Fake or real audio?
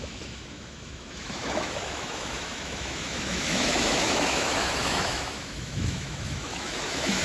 fake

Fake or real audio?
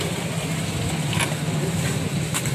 real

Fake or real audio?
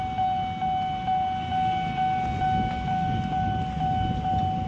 real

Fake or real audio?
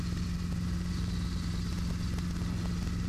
real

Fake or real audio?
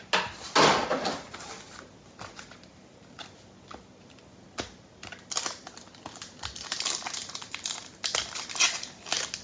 real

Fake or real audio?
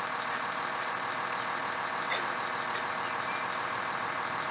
real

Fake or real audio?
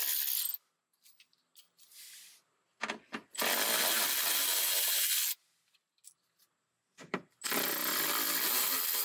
real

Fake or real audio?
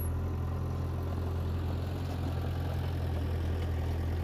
real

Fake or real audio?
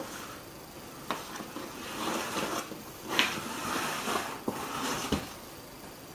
real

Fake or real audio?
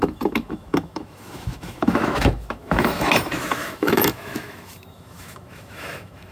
fake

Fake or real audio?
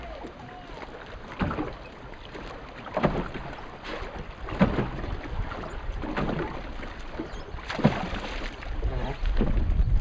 real